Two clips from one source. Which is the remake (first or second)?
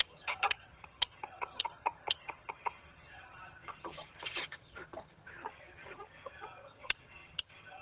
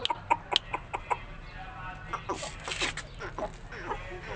first